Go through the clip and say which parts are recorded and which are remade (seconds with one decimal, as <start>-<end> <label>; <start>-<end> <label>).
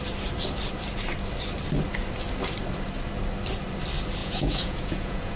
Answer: 0.0-4.2 recorded; 4.2-5.4 remade